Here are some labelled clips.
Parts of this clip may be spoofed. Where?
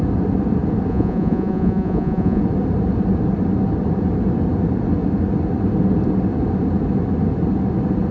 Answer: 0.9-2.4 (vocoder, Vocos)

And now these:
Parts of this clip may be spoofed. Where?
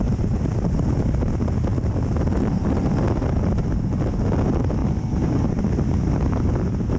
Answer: 4.8-6.5 (vocoder, BigVGAN v2)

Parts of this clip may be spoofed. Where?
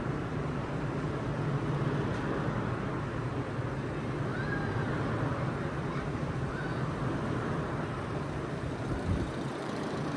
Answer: 0.0-1.3 (vocoder, BigVGAN v2); 6.5-10.2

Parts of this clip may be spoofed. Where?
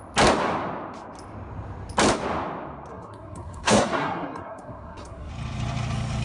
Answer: 2.9-5.3 (codec, SNAC)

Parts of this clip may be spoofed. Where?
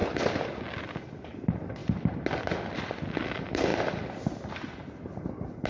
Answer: none